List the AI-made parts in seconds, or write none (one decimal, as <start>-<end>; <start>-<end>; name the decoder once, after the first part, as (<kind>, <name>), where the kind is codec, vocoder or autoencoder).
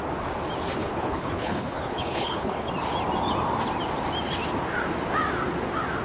0.8-2.7 (codec, HILCodec)